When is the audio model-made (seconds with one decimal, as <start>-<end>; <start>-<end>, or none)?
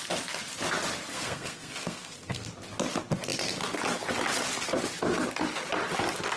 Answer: 1.1-2.5